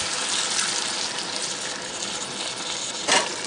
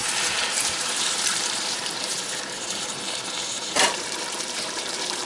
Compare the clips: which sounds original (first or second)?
first